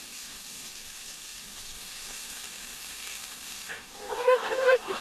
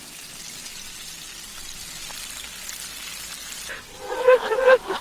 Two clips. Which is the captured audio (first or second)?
second